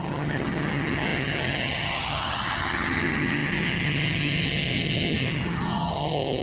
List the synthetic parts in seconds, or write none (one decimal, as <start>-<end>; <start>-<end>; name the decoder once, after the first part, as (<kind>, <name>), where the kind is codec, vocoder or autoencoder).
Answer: 0.0-6.4 (vocoder, HiFi-GAN)

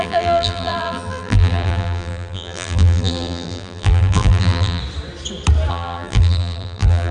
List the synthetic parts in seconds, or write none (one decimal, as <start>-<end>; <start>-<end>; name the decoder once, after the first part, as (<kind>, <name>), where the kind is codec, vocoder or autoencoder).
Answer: 0.0-4.8 (vocoder, BigVGAN v2); 5.7-7.1

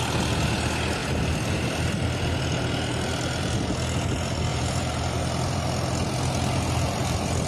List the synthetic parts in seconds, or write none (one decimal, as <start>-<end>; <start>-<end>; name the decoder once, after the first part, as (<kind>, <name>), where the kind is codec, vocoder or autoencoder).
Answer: 4.5-5.3 (vocoder, BigVGAN v2)

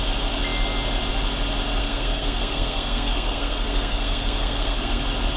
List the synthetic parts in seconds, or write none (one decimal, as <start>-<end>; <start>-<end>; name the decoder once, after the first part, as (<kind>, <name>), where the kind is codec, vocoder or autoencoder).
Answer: 1.8-5.0 (codec, SNAC)

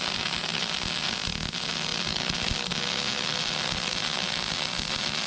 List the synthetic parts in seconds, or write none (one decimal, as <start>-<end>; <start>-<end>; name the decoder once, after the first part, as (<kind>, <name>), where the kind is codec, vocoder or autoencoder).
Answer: none

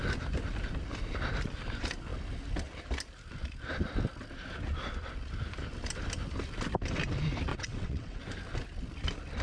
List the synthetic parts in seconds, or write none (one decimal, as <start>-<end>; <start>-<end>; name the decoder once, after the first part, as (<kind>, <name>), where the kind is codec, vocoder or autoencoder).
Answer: 7.5-8.2 (vocoder, WaveNeXt)